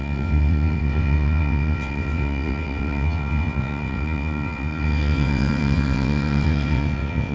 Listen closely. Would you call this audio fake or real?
fake